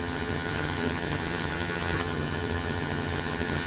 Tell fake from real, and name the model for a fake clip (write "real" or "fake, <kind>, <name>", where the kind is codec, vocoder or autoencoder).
fake, vocoder, HiFi-GAN